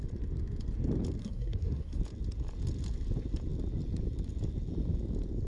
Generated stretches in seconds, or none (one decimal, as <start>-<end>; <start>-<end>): 1.2-2.0